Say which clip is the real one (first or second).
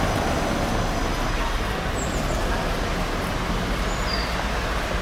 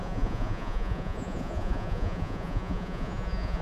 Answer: first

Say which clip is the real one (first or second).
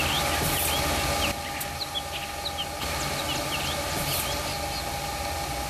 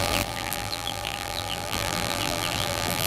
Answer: first